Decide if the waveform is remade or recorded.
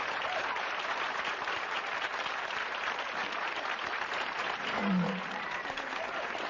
remade